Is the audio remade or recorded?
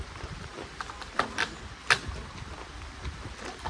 remade